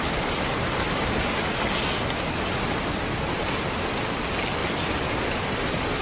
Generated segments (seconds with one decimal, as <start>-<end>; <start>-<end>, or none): none